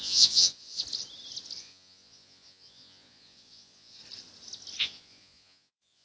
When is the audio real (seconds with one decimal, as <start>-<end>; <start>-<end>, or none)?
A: 0.8-1.6; 4.0-4.8